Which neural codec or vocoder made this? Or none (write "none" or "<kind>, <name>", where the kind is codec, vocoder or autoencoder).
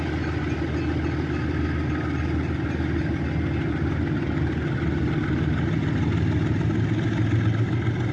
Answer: none